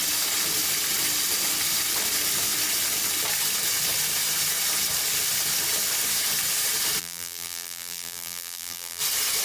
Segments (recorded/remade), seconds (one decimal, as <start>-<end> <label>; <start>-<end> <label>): 0.0-7.0 recorded; 7.0-9.0 remade; 9.0-9.4 recorded